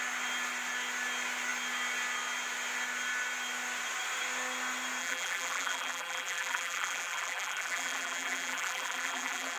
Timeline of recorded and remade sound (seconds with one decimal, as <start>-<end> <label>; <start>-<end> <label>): 0.0-5.0 recorded; 5.0-9.6 remade